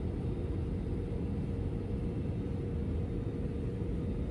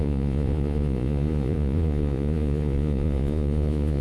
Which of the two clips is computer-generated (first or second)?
second